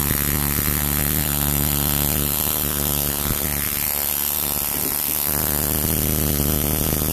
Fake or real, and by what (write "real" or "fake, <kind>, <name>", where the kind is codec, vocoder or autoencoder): real